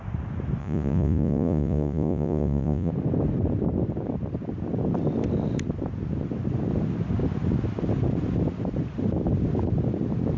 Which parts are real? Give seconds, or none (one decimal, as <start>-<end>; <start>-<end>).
0.0-0.6; 2.9-10.4